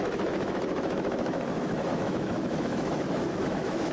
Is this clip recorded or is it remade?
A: remade